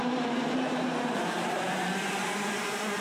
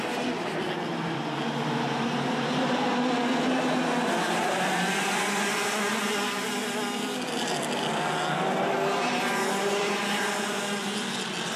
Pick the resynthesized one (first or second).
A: first